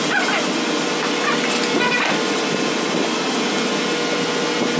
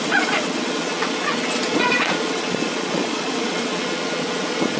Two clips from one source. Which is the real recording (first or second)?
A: first